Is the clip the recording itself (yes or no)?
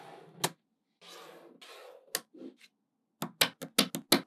yes